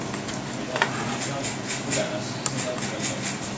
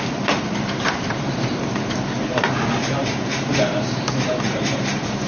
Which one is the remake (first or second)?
second